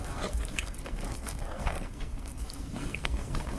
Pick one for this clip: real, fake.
fake